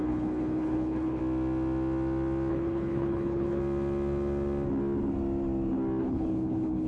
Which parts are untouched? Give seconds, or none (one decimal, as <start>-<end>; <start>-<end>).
1.2-2.5; 3.6-6.0